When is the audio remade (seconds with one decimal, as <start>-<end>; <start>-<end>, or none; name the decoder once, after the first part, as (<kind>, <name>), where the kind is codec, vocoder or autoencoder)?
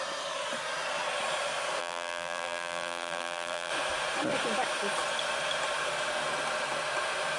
1.8-3.7 (vocoder, BigVGAN v2)